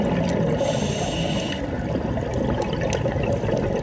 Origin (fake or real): real